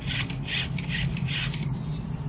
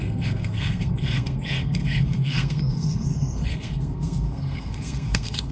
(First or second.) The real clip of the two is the first